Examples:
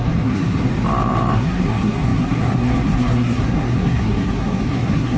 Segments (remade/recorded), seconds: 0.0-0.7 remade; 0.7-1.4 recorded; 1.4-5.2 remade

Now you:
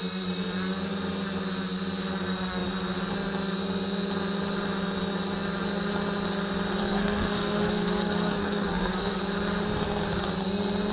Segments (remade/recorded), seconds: 0.0-6.8 recorded; 6.8-9.2 remade; 9.2-10.9 recorded

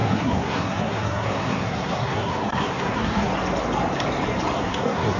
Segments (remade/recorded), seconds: 0.0-3.3 remade; 3.3-4.6 recorded; 4.6-5.2 remade

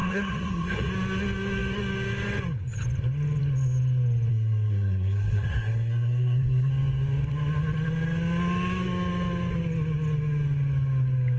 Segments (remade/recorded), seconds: 0.0-0.9 remade; 0.9-4.3 recorded; 4.3-6.7 remade; 6.7-11.4 recorded

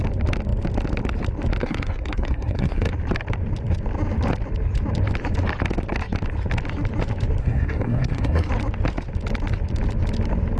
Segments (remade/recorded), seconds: 0.0-1.6 recorded; 1.6-2.9 remade; 2.9-7.4 recorded; 7.4-8.5 remade; 8.5-10.6 recorded

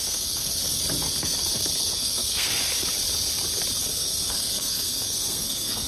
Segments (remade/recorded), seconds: 0.0-0.6 remade; 0.6-1.2 recorded; 1.2-2.5 remade; 2.5-3.8 recorded; 3.8-5.9 remade

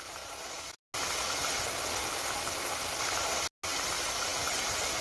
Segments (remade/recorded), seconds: 0.0-5.0 recorded